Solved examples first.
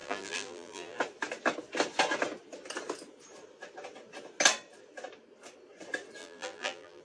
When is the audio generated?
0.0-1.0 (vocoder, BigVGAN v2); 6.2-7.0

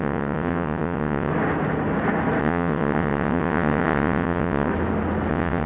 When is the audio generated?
0.0-1.3 (vocoder, WaveNeXt); 2.4-4.7; 5.3-5.7

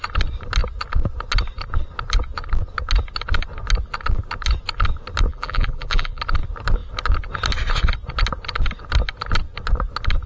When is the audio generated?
5.3-6.2 (vocoder, BigVGAN v2)